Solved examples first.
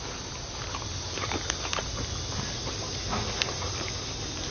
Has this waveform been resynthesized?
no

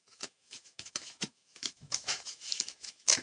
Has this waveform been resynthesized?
yes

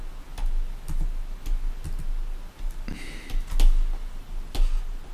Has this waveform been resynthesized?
no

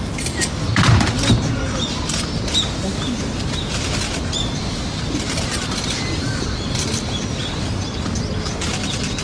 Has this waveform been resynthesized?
no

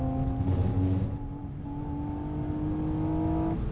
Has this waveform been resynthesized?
no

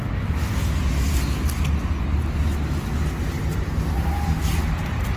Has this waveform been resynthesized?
no